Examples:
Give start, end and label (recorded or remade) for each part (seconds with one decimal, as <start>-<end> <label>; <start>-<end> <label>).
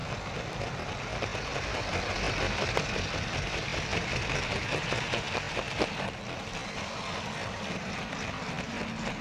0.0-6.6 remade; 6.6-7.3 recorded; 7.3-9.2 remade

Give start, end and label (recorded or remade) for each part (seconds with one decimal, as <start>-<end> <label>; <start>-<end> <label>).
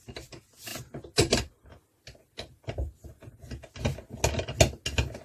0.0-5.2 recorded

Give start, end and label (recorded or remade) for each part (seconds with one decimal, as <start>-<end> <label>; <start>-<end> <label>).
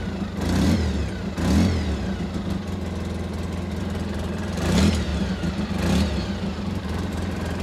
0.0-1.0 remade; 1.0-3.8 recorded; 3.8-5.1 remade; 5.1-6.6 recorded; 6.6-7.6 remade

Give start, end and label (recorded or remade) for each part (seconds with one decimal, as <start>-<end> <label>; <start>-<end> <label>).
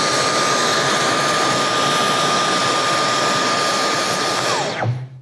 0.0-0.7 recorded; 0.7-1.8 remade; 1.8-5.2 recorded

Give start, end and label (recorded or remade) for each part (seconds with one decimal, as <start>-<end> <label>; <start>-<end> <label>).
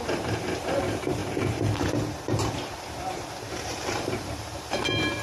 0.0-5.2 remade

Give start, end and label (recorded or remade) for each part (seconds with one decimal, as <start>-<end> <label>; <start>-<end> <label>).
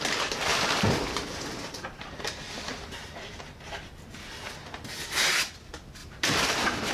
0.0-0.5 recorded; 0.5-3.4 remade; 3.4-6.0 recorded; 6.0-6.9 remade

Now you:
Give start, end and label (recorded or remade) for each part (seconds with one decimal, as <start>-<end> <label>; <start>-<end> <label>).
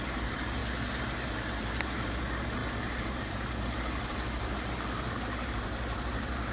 0.0-0.6 remade; 0.6-1.3 recorded; 1.3-6.5 remade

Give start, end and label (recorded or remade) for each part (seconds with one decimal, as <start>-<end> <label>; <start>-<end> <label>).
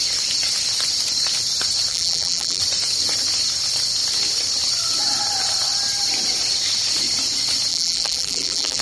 0.0-1.9 recorded; 1.9-2.6 remade; 2.6-7.7 recorded; 7.7-8.8 remade